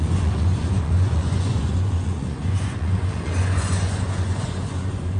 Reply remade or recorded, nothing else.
remade